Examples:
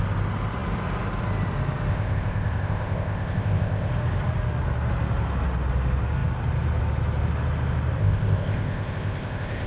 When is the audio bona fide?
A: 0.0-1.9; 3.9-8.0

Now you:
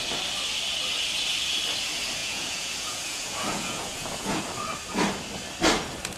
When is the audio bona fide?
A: 0.0-2.2; 4.4-6.2

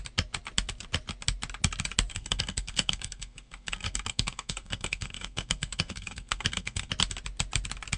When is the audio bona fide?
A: 0.0-2.1; 6.9-8.0

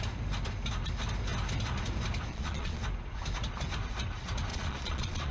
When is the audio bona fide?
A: 0.0-2.3; 2.8-4.5

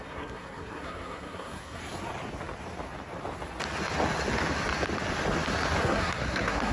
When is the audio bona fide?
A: 1.8-5.8

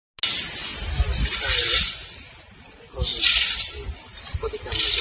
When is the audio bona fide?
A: 0.0-0.6; 1.8-3.1; 3.6-4.1

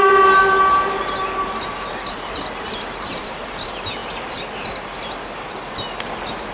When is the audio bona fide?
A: 0.0-6.5

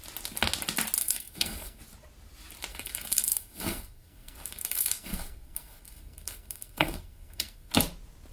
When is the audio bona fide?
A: 0.0-1.0; 1.8-2.7; 7.7-8.3